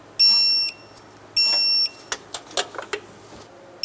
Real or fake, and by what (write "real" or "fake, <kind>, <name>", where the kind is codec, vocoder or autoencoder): real